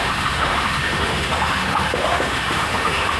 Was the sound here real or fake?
fake